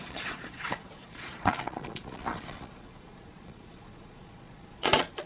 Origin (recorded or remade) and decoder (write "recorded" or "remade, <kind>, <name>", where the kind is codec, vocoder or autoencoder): remade, vocoder, Vocos